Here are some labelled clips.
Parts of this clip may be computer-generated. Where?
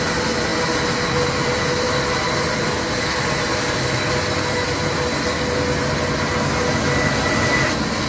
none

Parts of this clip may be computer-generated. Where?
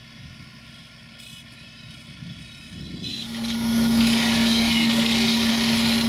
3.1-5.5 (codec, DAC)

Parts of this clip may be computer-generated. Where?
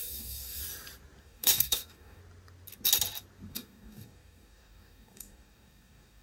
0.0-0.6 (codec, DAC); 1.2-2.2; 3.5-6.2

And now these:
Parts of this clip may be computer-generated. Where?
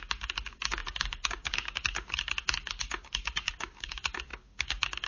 0.0-5.1 (codec, DAC)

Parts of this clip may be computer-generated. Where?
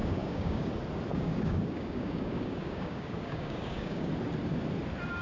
0.0-0.7 (codec, DAC); 1.1-4.1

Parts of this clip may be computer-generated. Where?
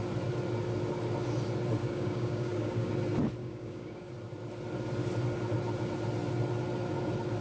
1.8-2.9 (codec, DAC); 3.4-4.1